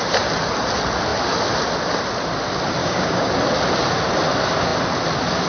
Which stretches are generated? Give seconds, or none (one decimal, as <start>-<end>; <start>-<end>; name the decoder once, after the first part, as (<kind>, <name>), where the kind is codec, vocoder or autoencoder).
2.8-3.3 (codec, DAC)